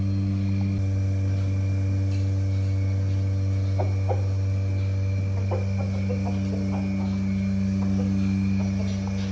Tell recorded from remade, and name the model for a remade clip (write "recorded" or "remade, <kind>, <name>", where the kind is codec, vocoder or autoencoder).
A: recorded